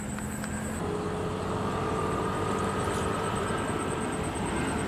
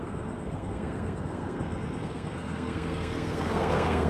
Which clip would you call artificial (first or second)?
second